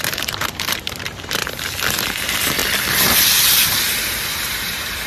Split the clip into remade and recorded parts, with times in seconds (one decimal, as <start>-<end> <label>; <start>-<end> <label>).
0.0-1.4 remade; 1.4-2.2 recorded; 2.2-2.6 remade; 2.6-4.1 recorded; 4.1-5.1 remade